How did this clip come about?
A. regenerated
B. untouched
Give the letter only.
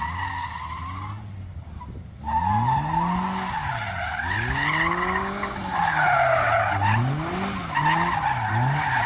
B